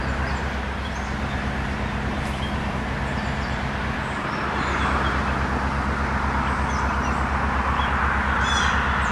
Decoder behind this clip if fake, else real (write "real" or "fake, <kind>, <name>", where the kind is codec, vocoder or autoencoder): fake, vocoder, BigVGAN v2